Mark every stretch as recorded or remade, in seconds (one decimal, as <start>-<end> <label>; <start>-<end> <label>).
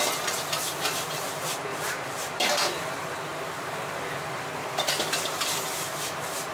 0.0-1.7 recorded; 1.7-2.9 remade; 2.9-6.5 recorded